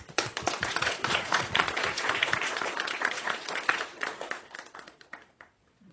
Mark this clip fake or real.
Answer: fake